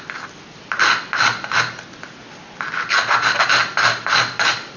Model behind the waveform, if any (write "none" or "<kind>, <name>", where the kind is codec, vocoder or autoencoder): none